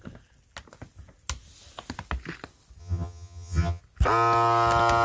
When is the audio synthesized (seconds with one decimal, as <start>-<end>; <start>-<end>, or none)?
2.8-3.8